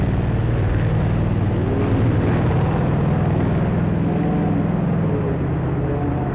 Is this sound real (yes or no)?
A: yes